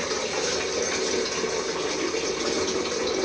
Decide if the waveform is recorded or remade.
recorded